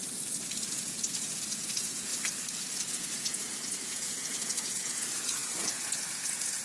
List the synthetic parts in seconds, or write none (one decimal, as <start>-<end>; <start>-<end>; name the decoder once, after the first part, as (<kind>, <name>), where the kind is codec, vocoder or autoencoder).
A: 0.6-2.1 (vocoder, Vocos); 2.9-6.6